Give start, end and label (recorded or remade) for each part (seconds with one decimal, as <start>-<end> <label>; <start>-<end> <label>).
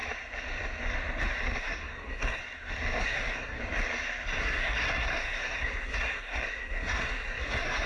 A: 0.0-1.6 recorded; 1.6-2.4 remade; 2.4-3.0 recorded; 3.0-3.6 remade; 3.6-4.4 recorded; 4.4-7.9 remade